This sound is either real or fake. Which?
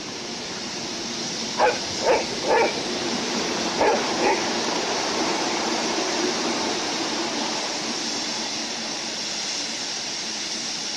fake